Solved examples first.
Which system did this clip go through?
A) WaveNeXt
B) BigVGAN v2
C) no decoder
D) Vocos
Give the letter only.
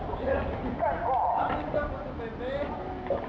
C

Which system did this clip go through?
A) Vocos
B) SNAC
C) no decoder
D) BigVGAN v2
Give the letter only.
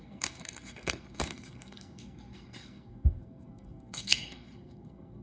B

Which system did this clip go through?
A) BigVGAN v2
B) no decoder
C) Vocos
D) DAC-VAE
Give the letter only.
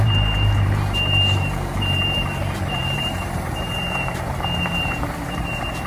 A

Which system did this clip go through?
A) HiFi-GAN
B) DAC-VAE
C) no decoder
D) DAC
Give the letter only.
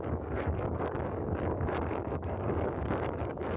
D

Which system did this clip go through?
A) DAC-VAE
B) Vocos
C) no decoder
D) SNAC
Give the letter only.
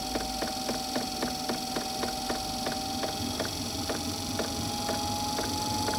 C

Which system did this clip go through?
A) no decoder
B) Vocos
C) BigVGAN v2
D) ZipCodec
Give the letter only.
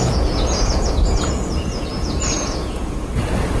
B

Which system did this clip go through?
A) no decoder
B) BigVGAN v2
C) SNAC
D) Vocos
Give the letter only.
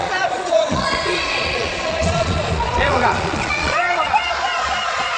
D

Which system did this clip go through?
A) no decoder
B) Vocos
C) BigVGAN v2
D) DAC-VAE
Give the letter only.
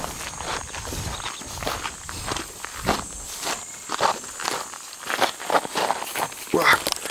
A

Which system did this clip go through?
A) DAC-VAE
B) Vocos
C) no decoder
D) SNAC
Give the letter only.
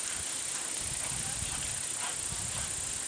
C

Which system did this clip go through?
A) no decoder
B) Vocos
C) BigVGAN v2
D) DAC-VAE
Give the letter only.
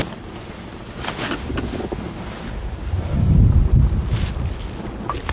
A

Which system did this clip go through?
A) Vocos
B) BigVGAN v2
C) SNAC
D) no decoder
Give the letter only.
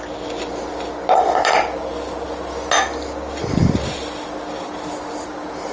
D